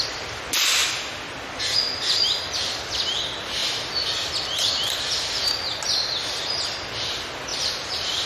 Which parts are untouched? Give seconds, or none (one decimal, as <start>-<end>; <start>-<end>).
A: 0.0-7.5